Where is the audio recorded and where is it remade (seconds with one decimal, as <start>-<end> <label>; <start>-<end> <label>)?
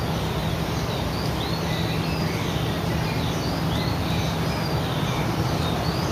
0.0-0.4 recorded; 0.4-4.1 remade; 4.1-6.1 recorded